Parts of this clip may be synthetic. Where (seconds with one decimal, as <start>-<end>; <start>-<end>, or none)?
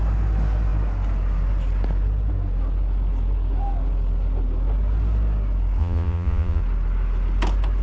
5.8-6.6